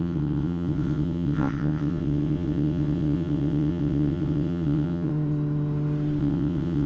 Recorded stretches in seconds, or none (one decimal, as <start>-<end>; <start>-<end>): 5.1-6.2